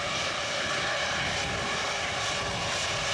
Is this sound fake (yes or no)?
no